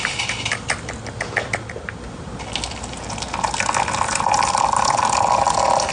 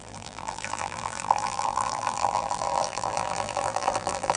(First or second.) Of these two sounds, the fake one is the second